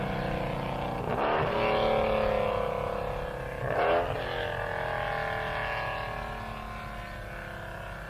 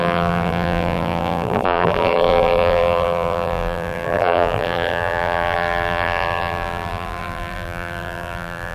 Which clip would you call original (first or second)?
first